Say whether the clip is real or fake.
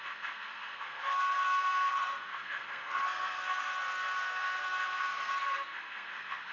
fake